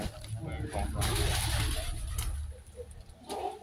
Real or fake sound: real